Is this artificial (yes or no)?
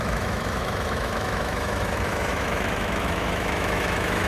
yes